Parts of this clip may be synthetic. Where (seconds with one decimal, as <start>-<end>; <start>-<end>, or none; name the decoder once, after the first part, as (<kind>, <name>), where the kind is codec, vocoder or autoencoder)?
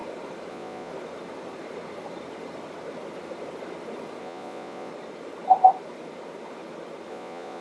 0.5-0.9 (vocoder, Vocos); 4.2-4.9; 7.1-7.6